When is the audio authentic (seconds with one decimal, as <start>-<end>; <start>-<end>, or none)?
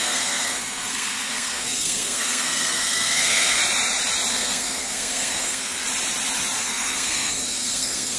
3.6-4.3; 5.8-6.6